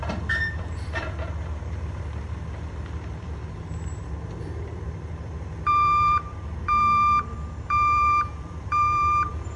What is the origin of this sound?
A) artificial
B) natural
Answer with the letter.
A